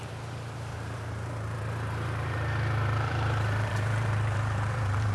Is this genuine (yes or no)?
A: no